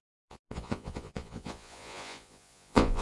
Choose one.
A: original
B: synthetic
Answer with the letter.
B